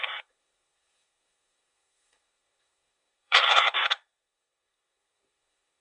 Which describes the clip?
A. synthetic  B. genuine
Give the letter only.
A